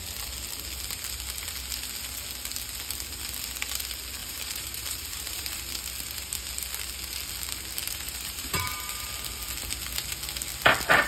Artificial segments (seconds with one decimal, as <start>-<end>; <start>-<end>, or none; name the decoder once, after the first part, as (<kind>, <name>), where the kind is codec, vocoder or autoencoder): 4.2-5.6 (vocoder, BigVGAN v2); 7.8-9.1